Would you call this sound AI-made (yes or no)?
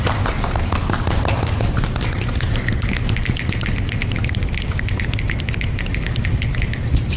no